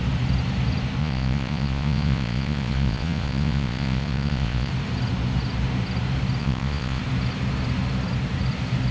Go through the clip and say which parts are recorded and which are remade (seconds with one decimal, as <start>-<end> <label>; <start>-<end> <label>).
0.0-1.0 recorded; 1.0-4.7 remade; 4.7-6.4 recorded; 6.4-7.0 remade; 7.0-8.9 recorded